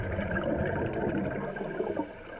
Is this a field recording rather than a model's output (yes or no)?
yes